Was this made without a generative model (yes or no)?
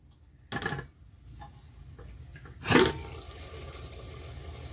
yes